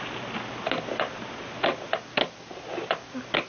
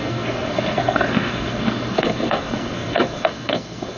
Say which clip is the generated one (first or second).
second